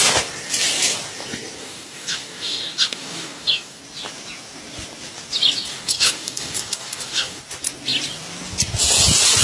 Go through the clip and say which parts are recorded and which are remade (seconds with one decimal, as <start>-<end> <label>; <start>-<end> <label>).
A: 0.0-1.6 recorded; 1.6-3.8 remade; 3.8-5.7 recorded; 5.7-7.4 remade; 7.4-9.4 recorded